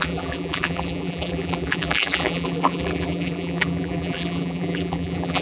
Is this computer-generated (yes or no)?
yes